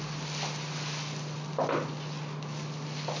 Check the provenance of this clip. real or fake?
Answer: real